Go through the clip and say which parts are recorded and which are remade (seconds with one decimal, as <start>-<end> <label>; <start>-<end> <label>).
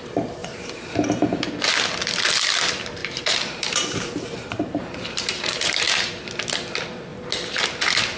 0.0-0.4 recorded; 0.4-1.5 remade; 1.5-3.0 recorded; 3.0-6.3 remade; 6.3-8.2 recorded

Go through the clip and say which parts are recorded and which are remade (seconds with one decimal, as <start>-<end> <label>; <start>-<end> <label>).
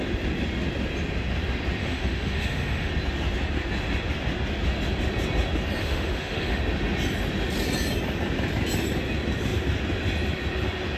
0.0-1.8 recorded; 1.8-2.9 remade; 2.9-5.8 recorded; 5.8-6.6 remade; 6.6-11.0 recorded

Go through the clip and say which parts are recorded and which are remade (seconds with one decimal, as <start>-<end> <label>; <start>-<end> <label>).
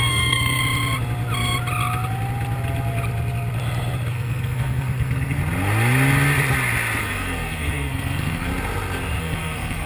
0.0-0.6 remade; 0.6-4.1 recorded; 4.1-5.4 remade; 5.4-7.0 recorded; 7.0-8.5 remade; 8.5-9.2 recorded; 9.2-9.9 remade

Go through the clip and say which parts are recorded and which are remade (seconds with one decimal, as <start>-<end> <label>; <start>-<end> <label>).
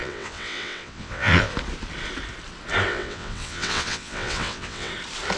0.0-1.5 remade; 1.5-2.9 recorded; 2.9-4.9 remade; 4.9-5.4 recorded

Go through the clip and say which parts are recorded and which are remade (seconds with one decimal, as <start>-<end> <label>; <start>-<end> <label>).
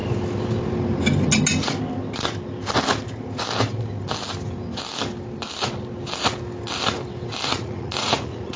0.0-7.5 recorded; 7.5-8.6 remade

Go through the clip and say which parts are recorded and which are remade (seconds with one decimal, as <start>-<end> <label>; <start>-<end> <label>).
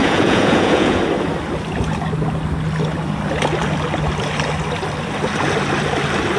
0.0-1.0 remade; 1.0-6.4 recorded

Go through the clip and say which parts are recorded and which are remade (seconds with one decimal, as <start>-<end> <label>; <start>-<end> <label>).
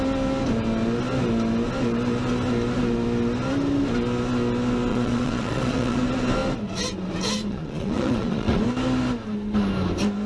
0.0-4.9 recorded; 4.9-6.0 remade; 6.0-7.5 recorded; 7.5-8.6 remade; 8.6-10.3 recorded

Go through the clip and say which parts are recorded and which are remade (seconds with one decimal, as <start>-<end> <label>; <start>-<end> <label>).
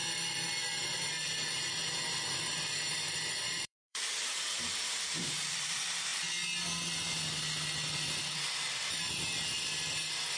0.0-0.8 recorded; 0.8-2.9 remade; 2.9-3.4 recorded; 3.4-6.1 remade; 6.1-10.4 recorded